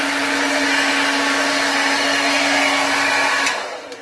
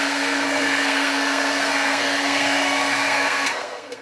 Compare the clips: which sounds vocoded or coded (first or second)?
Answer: second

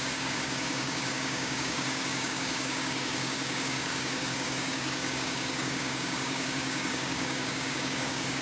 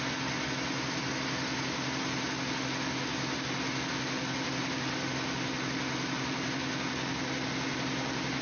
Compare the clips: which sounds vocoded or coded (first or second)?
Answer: first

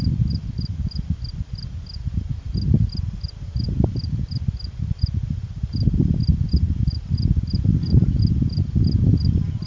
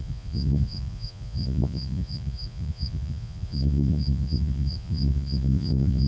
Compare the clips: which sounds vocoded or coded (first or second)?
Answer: second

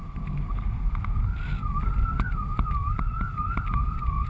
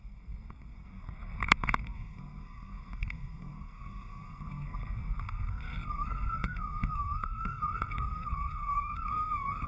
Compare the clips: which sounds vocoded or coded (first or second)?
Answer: second